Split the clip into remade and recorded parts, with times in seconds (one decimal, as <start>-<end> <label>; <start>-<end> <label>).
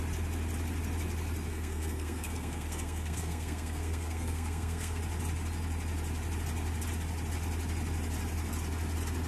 0.0-1.5 recorded; 1.5-5.0 remade; 5.0-9.3 recorded